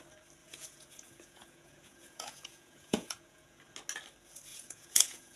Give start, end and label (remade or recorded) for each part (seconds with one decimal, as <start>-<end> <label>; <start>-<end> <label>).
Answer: 0.0-0.4 recorded; 0.4-3.6 remade; 3.6-4.5 recorded; 4.5-5.4 remade